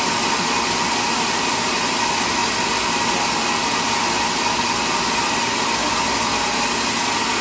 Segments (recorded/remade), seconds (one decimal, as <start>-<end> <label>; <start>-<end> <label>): 0.0-7.4 recorded